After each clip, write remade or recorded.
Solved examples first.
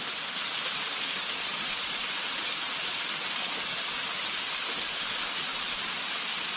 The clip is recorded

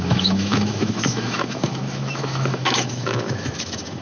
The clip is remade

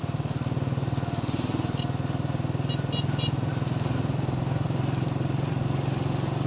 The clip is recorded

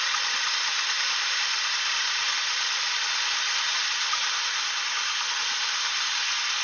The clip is recorded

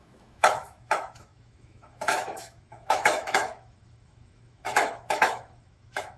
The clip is remade